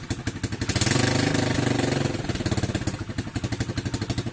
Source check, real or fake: real